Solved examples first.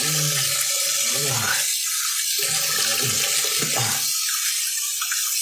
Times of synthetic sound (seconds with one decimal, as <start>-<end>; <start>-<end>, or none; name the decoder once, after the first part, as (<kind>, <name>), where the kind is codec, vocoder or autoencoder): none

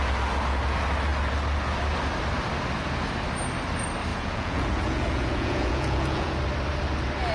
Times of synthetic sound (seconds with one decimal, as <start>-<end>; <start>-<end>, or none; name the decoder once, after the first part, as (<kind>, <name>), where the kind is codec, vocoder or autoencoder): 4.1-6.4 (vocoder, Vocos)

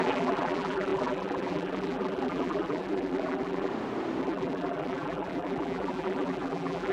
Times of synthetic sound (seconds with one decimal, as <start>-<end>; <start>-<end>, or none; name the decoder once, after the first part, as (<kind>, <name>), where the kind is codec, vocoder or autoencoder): 0.0-3.7 (vocoder, BigVGAN v2); 4.2-6.9